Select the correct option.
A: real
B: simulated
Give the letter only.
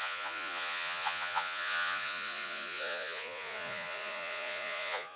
B